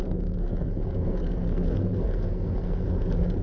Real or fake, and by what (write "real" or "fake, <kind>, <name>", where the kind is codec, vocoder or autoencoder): fake, codec, SNAC